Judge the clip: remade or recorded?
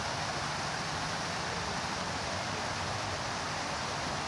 remade